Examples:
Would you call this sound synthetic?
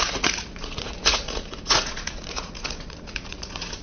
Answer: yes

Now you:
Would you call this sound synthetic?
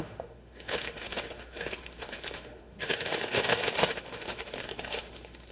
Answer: yes